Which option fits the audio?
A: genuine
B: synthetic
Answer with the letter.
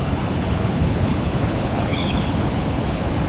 B